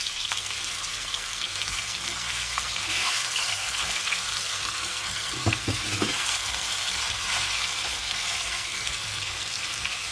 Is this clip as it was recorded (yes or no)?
no